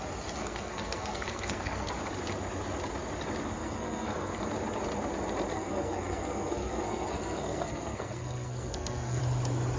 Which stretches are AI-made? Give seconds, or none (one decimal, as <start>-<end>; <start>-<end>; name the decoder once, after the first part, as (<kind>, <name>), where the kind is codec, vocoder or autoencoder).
0.4-1.9 (codec, SNAC); 3.6-4.4; 5.5-9.2